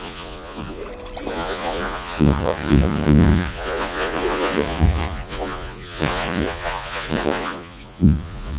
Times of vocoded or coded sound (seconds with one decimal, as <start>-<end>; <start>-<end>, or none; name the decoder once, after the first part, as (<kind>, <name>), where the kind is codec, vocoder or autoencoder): 0.0-0.8 (vocoder, Vocos); 1.3-8.6